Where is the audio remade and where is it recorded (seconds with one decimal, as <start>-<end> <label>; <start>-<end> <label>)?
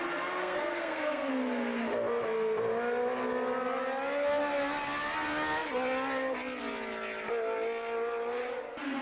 0.0-0.4 recorded; 0.4-1.3 remade; 1.3-9.0 recorded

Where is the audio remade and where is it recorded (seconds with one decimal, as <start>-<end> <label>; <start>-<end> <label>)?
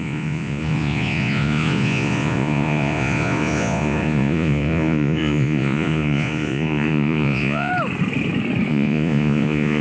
0.0-7.7 remade; 7.7-8.7 recorded; 8.7-9.8 remade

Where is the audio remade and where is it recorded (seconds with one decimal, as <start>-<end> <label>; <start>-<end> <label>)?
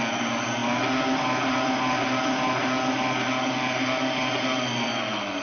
0.0-5.4 recorded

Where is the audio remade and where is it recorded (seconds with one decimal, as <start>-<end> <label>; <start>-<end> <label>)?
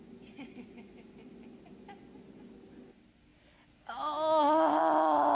0.0-5.3 recorded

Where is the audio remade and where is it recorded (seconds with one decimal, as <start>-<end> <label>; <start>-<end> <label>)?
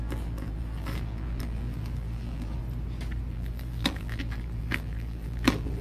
0.0-2.6 remade; 2.6-3.3 recorded; 3.3-5.8 remade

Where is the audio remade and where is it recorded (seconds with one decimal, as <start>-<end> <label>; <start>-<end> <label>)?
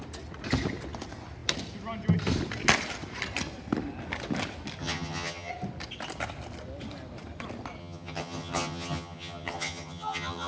0.0-4.8 recorded; 4.8-5.5 remade; 5.5-7.8 recorded; 7.8-10.5 remade